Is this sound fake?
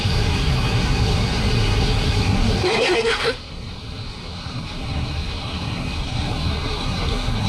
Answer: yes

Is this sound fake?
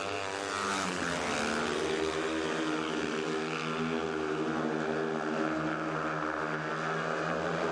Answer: no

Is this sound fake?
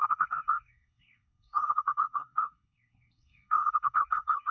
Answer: yes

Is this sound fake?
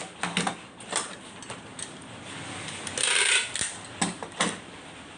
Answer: no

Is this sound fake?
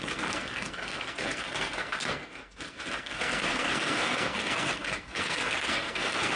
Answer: yes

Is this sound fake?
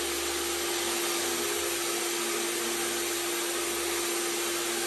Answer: no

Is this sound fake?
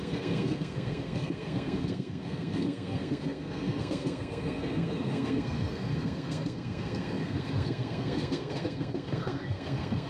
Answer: yes